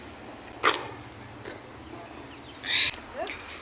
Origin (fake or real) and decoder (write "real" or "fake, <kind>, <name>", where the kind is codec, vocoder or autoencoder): real